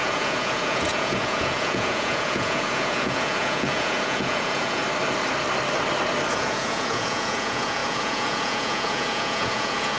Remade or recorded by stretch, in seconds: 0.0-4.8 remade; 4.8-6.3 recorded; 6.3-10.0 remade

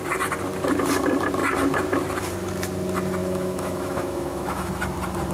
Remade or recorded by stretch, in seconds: 0.0-3.2 recorded; 3.2-4.7 remade; 4.7-5.3 recorded